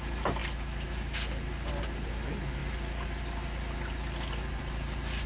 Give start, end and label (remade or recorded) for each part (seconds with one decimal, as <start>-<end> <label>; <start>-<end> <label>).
0.0-5.3 recorded